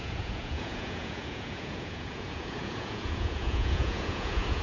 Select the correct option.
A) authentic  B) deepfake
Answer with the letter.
B